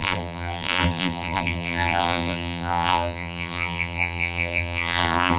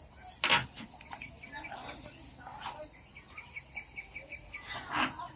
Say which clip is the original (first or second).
second